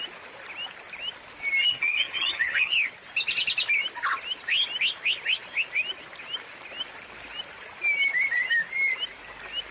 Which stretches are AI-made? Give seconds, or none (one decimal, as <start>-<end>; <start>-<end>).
1.7-2.7